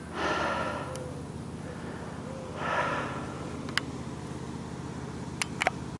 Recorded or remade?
recorded